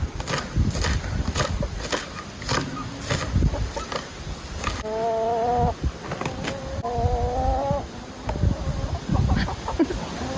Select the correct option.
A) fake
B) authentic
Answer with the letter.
B